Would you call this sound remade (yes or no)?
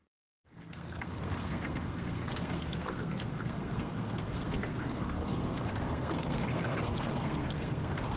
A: yes